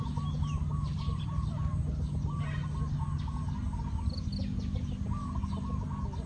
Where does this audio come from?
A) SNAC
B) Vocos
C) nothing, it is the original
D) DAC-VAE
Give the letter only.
C